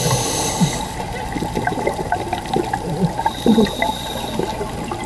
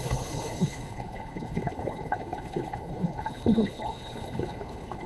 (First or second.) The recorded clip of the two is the first